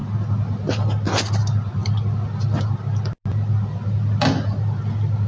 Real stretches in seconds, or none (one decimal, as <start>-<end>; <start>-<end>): 0.0-5.3